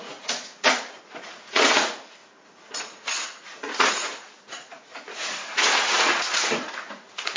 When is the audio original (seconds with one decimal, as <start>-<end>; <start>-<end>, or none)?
none